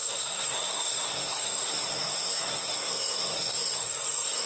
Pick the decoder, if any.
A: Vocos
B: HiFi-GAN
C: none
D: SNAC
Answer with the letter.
D